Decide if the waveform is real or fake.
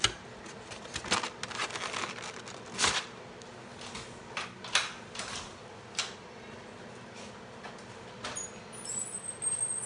real